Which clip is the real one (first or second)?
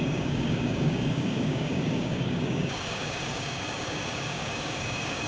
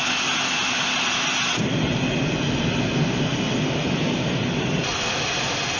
second